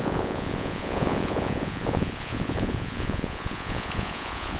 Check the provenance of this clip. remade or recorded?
remade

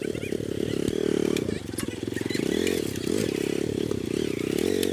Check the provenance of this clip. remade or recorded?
recorded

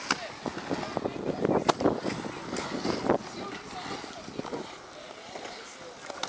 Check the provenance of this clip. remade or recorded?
recorded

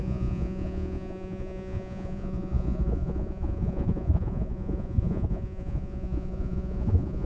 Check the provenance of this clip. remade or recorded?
remade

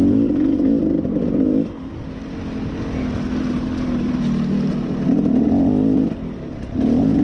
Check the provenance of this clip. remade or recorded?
recorded